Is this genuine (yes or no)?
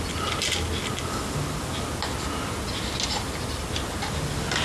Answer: yes